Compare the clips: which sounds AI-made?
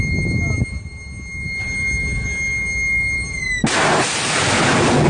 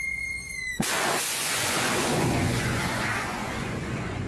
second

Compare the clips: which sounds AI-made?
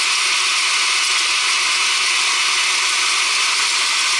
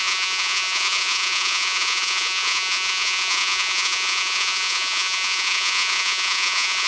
second